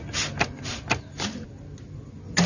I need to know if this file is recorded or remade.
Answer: recorded